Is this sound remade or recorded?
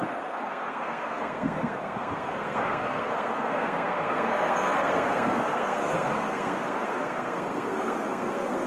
remade